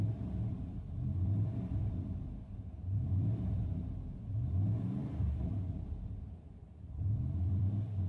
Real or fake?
fake